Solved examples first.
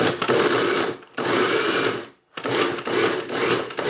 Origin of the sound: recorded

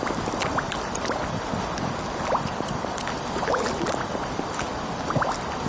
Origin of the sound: recorded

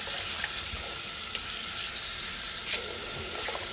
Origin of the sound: recorded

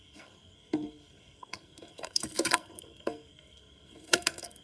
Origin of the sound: remade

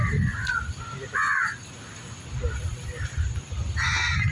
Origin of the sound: recorded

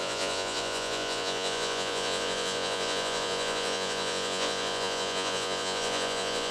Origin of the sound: remade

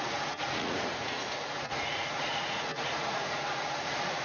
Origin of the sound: remade